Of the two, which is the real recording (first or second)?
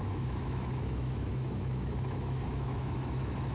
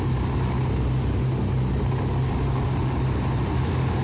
second